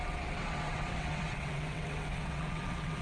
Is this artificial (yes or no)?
yes